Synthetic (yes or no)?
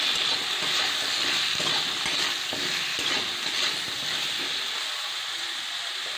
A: no